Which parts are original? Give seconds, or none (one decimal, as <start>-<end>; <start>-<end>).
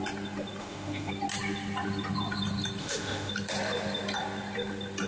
0.0-0.6; 1.1-2.8; 3.3-5.1